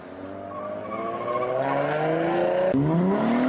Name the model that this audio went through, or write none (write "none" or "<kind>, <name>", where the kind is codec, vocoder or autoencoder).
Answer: none